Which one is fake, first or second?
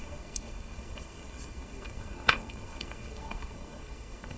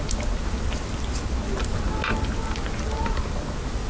first